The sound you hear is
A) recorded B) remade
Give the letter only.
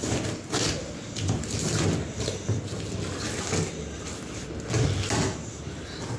A